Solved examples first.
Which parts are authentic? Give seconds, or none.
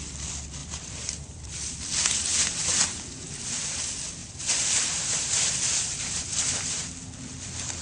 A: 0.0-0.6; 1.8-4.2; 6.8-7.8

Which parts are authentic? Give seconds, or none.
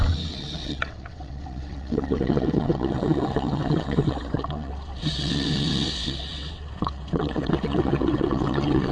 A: none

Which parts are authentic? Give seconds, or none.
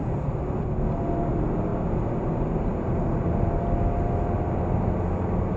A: 0.0-5.6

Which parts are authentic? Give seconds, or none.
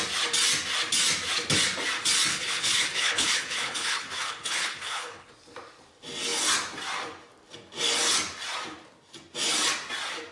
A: 0.0-2.3; 5.3-10.3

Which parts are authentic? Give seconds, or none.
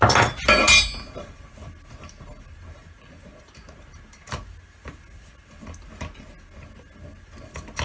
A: 0.0-7.8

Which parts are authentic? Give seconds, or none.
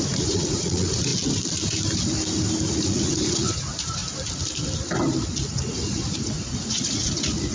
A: 1.1-2.7; 4.0-5.4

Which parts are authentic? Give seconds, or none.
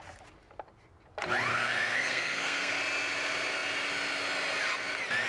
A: 0.0-1.5; 2.7-5.3